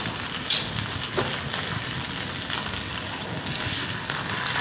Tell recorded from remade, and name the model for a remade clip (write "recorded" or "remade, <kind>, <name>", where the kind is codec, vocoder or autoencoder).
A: recorded